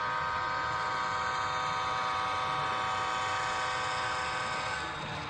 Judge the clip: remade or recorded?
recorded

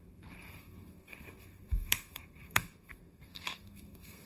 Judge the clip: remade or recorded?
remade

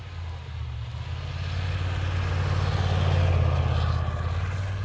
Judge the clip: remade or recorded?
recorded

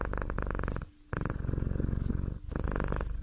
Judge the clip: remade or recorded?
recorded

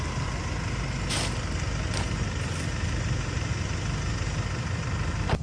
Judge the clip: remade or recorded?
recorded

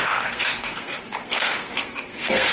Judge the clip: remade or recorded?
remade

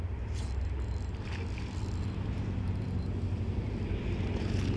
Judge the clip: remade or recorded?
recorded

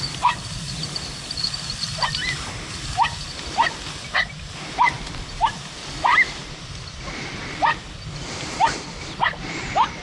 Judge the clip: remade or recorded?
recorded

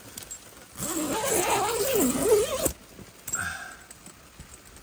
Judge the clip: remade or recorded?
recorded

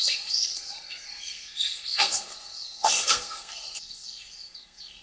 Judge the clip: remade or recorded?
remade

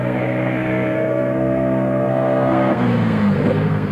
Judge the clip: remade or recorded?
remade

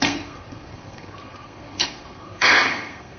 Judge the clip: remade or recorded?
remade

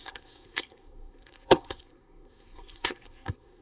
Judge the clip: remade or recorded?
remade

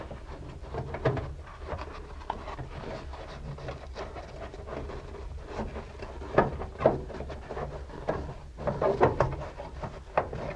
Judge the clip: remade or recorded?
recorded